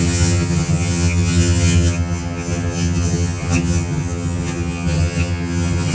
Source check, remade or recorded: remade